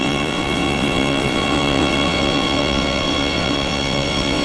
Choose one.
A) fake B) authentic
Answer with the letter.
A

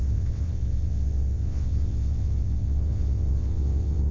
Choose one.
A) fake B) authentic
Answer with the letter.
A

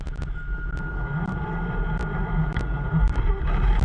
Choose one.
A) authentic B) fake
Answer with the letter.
A